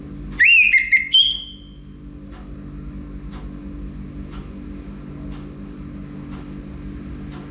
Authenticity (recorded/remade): recorded